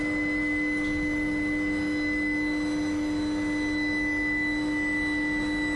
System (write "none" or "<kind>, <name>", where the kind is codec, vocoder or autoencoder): none